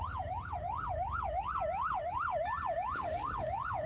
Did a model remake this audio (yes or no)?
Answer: no